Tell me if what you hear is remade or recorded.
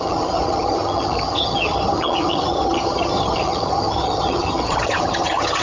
remade